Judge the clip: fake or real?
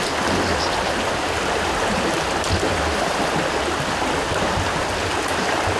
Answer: real